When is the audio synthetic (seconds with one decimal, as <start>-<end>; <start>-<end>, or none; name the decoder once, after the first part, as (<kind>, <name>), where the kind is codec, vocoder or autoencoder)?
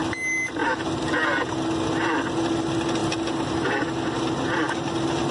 none